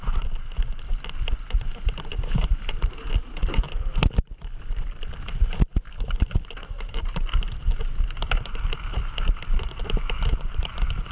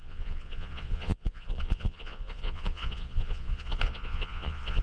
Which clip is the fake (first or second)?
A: second